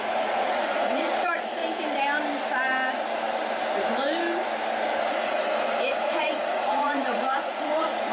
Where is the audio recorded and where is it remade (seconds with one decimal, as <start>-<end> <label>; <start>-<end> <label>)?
0.0-1.6 remade; 1.6-5.1 recorded; 5.1-5.5 remade; 5.5-6.0 recorded; 6.0-8.1 remade